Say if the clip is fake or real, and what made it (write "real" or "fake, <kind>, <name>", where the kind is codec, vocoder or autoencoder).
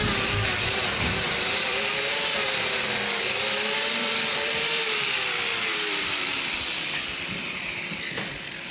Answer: fake, vocoder, BigVGAN v2